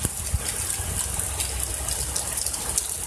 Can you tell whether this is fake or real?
real